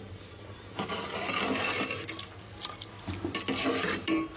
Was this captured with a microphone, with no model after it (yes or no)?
yes